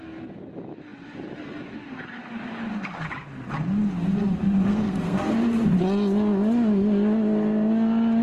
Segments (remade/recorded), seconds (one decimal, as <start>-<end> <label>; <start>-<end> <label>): 0.0-4.7 recorded; 4.7-5.3 remade; 5.3-8.2 recorded